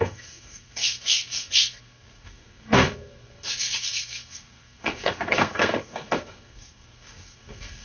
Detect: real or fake fake